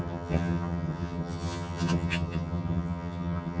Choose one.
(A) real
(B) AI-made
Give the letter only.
B